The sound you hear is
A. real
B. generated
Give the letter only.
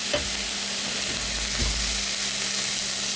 A